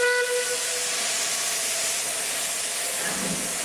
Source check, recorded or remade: recorded